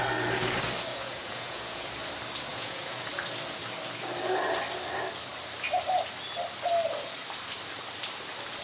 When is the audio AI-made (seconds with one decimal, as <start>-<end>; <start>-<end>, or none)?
0.9-1.9; 2.5-3.1